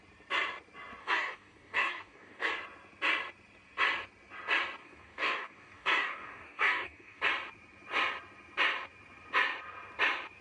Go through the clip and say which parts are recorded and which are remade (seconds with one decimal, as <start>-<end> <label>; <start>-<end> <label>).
0.0-1.0 recorded; 1.0-2.5 remade; 2.5-4.8 recorded; 4.8-7.2 remade; 7.2-10.4 recorded